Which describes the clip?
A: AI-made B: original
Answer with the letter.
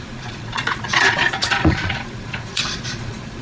A